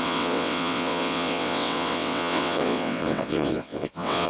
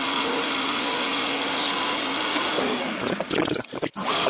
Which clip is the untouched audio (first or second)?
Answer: second